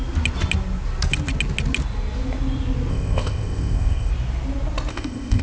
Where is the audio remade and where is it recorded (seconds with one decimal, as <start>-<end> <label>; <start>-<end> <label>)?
0.0-2.9 recorded; 2.9-4.1 remade; 4.1-4.9 recorded; 4.9-5.4 remade